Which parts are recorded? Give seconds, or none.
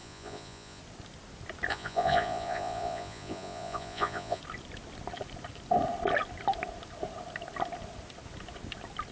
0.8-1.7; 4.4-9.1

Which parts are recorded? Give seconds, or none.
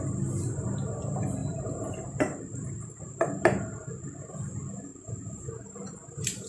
0.0-1.4; 2.9-4.9; 5.9-6.5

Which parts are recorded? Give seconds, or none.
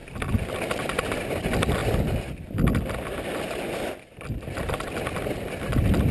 0.0-6.1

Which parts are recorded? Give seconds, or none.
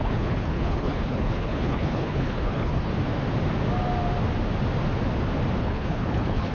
2.9-5.6